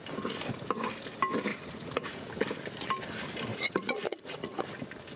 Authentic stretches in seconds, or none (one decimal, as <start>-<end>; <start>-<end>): 0.0-1.5; 2.3-3.5; 4.5-5.2